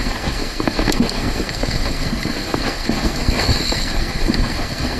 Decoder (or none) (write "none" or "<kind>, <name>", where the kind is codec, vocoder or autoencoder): codec, SNAC